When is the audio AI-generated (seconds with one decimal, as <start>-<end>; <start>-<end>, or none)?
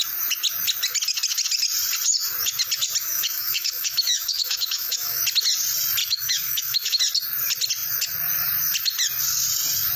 3.0-5.2; 6.0-7.0